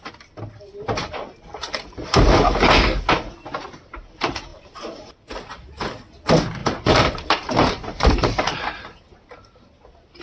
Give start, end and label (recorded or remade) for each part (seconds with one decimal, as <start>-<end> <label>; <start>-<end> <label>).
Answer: 0.0-1.0 recorded; 1.0-2.2 remade; 2.2-4.5 recorded; 4.5-5.9 remade; 5.9-6.6 recorded; 6.6-9.0 remade; 9.0-10.2 recorded